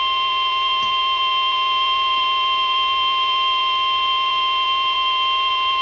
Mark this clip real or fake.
fake